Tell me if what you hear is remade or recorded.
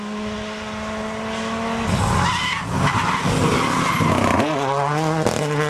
recorded